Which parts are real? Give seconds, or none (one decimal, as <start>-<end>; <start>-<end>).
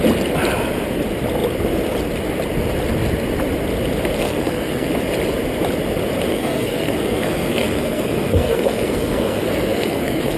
0.0-4.2; 4.9-6.3